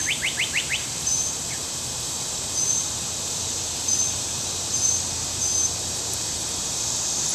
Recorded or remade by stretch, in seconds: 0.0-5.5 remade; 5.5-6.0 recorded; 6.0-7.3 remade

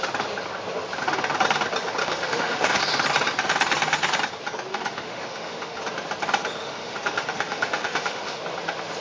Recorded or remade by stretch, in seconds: 0.0-2.0 recorded; 2.0-2.8 remade; 2.8-4.7 recorded; 4.7-5.8 remade; 5.8-6.6 recorded; 6.6-8.4 remade; 8.4-9.0 recorded